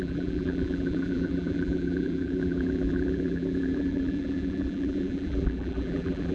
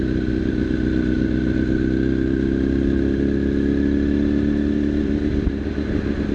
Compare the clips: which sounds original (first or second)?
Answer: second